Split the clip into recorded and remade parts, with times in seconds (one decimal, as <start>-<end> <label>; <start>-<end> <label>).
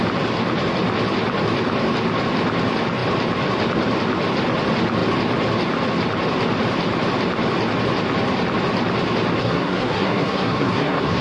0.0-9.4 recorded; 9.4-11.2 remade